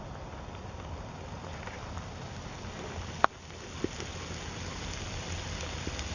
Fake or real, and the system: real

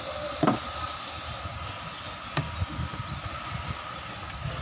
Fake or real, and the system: real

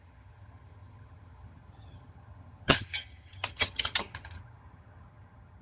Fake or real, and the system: fake, vocoder, HiFi-GAN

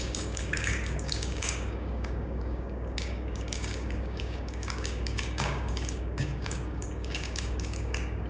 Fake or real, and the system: fake, codec, DAC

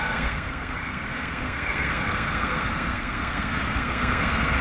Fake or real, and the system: fake, codec, SNAC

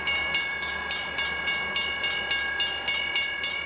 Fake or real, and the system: real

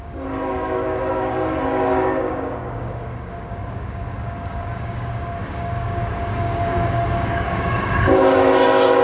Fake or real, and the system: fake, codec, DAC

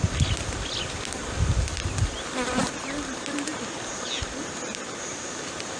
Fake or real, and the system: real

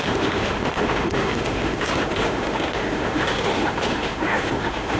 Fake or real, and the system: fake, autoencoder, DAC-VAE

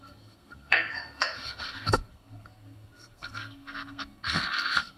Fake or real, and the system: fake, codec, SNAC